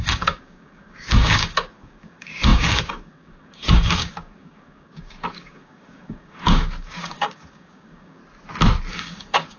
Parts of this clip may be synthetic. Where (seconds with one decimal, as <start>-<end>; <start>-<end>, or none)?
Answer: 0.0-8.2; 8.9-9.6